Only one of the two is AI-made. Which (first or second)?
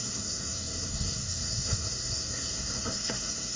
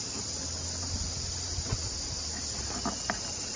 first